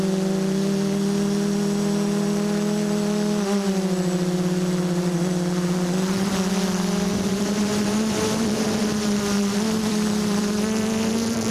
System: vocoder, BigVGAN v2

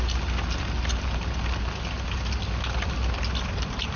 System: none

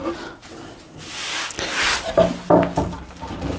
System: none